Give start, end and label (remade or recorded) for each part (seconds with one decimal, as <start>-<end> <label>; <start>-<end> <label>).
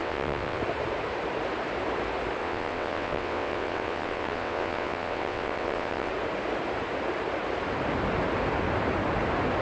0.0-0.6 remade; 0.6-2.4 recorded; 2.4-6.1 remade; 6.1-9.6 recorded